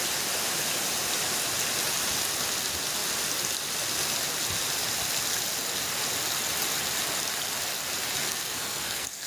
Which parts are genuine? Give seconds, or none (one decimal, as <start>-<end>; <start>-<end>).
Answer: 0.0-8.2